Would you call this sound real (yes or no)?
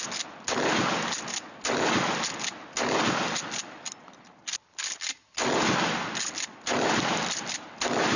yes